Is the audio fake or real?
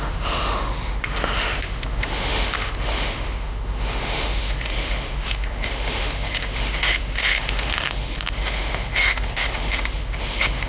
fake